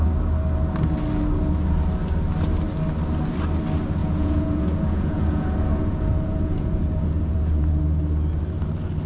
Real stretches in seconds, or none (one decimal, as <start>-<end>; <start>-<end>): 0.0-4.0; 7.8-9.1